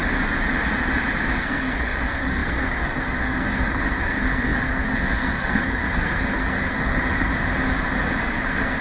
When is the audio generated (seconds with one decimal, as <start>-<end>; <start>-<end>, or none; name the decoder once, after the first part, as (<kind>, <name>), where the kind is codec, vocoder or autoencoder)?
1.4-7.3 (codec, SNAC); 8.2-8.8